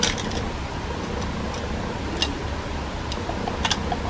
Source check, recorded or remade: recorded